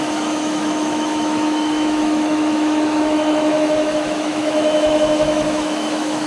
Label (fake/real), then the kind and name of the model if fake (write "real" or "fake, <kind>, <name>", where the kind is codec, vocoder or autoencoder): fake, autoencoder, DAC-VAE